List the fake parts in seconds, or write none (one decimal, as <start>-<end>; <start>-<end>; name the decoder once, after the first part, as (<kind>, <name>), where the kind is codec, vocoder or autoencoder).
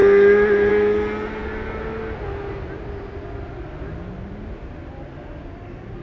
none